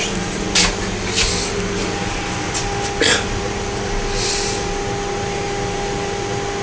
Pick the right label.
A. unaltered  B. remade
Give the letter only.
A